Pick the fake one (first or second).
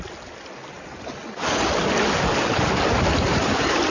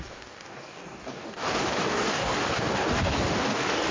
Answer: second